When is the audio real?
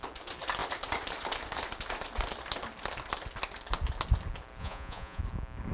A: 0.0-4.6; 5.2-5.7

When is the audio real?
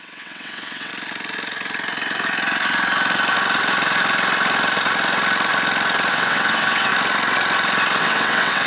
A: 0.9-6.1; 6.9-8.0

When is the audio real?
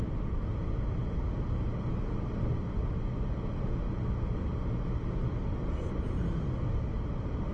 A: 0.0-7.5